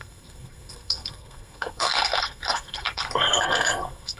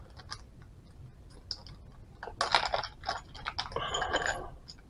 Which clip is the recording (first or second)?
second